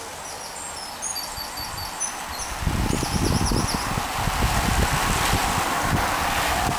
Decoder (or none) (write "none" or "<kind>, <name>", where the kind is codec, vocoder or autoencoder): none